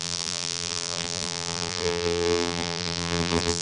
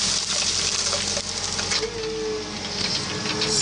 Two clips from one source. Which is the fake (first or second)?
first